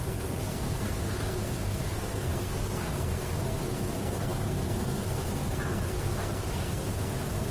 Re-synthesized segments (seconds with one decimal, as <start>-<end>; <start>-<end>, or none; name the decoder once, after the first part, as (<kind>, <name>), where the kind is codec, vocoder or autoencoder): 0.0-7.5 (codec, SNAC)